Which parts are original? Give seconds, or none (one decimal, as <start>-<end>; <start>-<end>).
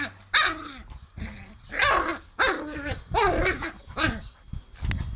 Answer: 0.0-5.2